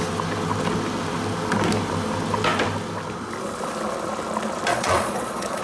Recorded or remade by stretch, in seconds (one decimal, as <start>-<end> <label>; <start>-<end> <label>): 0.0-4.7 recorded; 4.7-5.6 remade